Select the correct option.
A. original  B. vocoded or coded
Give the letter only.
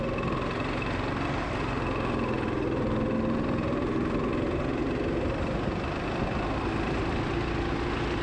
A